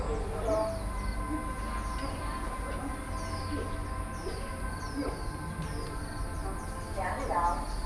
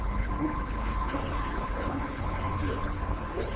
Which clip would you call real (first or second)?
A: first